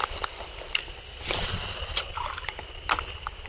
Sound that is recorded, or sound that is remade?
recorded